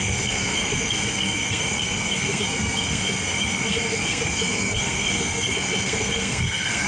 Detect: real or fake fake